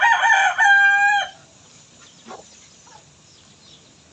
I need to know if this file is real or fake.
real